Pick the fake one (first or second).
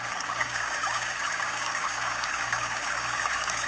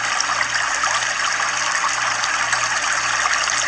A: first